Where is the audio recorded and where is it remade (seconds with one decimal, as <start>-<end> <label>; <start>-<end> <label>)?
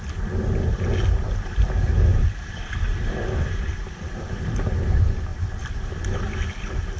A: 0.0-7.0 recorded